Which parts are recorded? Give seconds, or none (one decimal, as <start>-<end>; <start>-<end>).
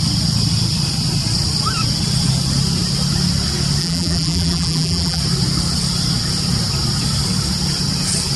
0.0-3.8; 5.2-8.4